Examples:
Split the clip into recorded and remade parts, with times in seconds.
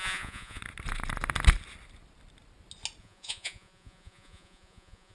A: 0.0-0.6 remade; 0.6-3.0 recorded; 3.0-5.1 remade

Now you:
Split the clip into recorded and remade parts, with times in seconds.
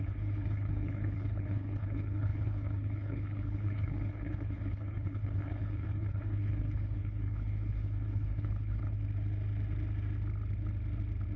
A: 0.0-8.8 remade; 8.8-11.4 recorded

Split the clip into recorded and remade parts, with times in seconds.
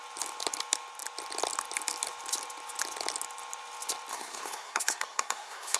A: 0.0-4.1 recorded; 4.1-5.8 remade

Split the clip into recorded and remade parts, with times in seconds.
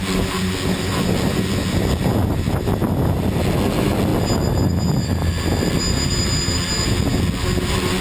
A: 0.0-8.0 recorded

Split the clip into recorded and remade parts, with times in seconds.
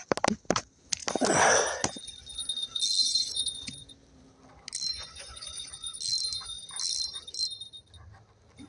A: 0.0-3.0 recorded; 3.0-3.9 remade; 3.9-4.9 recorded; 4.9-6.0 remade; 6.0-8.7 recorded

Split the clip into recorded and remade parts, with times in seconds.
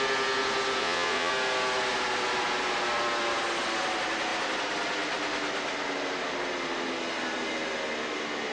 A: 0.0-0.8 recorded; 0.8-1.3 remade; 1.3-8.5 recorded